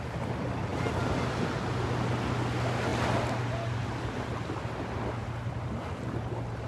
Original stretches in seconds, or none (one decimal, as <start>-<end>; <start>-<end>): 0.0-6.7